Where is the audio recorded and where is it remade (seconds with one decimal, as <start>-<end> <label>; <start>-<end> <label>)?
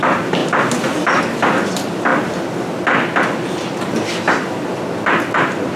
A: 0.0-5.8 recorded